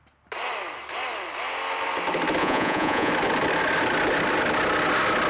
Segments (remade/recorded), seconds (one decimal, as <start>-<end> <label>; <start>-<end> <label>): 0.0-2.4 recorded; 2.4-3.1 remade; 3.1-5.3 recorded